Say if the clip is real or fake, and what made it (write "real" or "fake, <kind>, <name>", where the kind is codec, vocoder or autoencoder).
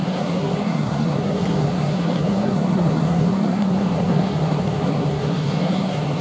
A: fake, codec, SNAC